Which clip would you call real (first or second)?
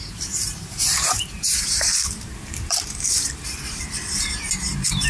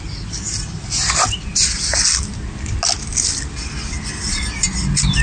second